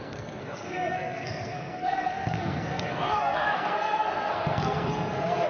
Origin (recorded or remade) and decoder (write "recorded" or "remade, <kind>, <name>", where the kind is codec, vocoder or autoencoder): remade, codec, SNAC